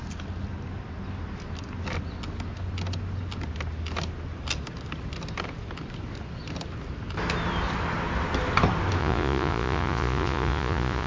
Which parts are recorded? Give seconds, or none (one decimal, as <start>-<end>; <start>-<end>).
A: 0.0-9.0

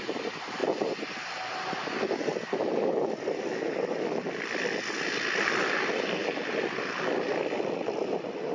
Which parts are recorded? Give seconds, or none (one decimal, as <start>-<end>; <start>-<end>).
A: 0.0-8.5

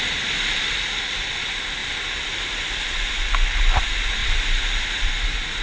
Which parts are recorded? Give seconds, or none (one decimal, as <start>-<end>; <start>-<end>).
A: 0.0-4.2; 5.1-5.6